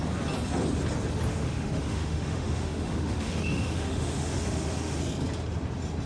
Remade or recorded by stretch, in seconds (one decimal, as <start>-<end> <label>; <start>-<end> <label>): 0.0-1.3 recorded; 1.3-5.0 remade; 5.0-6.1 recorded